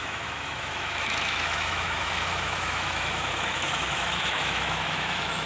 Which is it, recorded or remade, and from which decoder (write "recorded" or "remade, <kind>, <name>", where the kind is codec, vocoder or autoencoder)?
remade, autoencoder, DAC-VAE